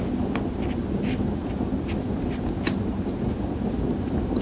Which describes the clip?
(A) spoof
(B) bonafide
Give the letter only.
B